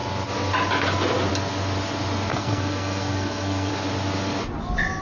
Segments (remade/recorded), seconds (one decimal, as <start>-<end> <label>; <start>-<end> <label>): 0.0-2.3 recorded; 2.3-3.7 remade; 3.7-5.0 recorded